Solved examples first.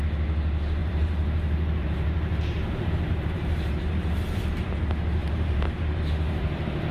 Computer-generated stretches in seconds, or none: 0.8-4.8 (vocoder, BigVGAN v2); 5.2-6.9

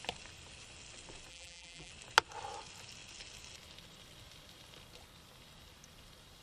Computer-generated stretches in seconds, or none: 1.3-1.9 (vocoder, BigVGAN v2)

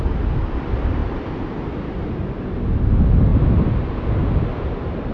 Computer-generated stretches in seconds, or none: none

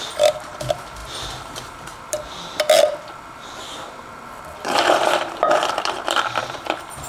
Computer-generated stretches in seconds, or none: 0.0-7.1 (vocoder, BigVGAN v2)